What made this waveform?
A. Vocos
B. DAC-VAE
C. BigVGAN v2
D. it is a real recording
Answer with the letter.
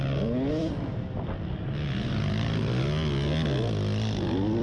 D